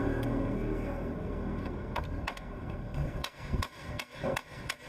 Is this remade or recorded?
remade